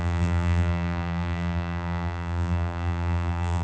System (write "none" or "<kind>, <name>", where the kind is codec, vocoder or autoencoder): vocoder, BigVGAN v2